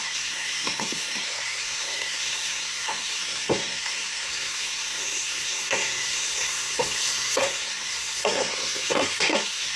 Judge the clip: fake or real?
fake